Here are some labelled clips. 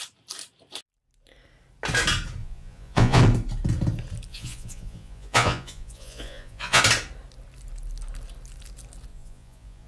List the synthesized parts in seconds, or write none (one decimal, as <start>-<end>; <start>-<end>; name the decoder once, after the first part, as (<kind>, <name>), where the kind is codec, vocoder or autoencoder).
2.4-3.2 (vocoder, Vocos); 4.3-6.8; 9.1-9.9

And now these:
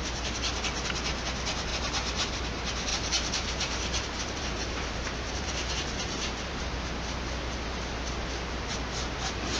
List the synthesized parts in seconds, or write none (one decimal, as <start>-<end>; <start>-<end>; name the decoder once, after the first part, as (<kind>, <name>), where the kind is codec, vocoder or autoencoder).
2.9-6.9 (vocoder, BigVGAN v2)

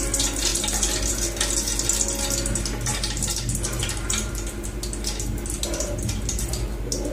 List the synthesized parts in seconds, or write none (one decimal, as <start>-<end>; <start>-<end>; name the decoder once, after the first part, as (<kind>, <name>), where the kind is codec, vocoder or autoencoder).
0.5-1.1 (vocoder, BigVGAN v2); 2.9-3.8